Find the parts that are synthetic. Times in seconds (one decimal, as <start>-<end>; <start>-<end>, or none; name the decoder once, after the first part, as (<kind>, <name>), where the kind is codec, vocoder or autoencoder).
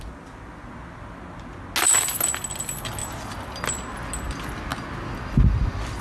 none